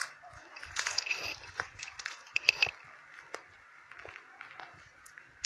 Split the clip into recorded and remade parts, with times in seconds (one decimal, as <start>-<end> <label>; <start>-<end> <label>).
0.0-2.5 remade; 2.5-5.5 recorded